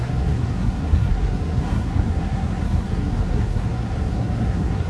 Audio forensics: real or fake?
fake